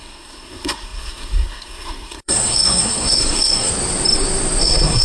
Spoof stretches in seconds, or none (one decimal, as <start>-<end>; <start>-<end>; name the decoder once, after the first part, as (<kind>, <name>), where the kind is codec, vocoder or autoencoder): 0.0-3.7 (codec, SNAC); 4.6-5.0